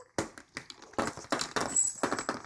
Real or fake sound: real